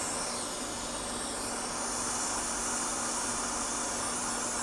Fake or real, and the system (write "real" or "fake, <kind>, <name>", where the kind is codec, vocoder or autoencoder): real